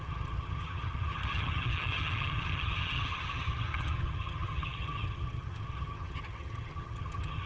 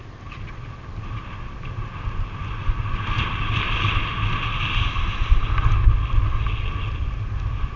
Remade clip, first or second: first